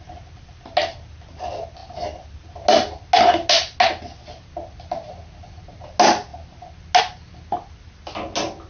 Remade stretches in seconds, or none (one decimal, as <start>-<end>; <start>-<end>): none